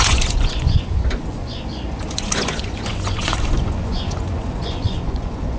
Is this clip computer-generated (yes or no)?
yes